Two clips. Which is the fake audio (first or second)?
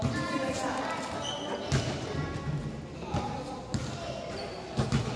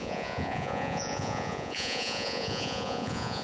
second